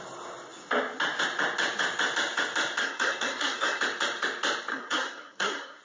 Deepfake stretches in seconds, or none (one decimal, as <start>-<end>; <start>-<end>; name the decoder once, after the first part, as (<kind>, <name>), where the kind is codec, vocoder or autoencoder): 2.8-3.8 (codec, SNAC); 4.7-5.8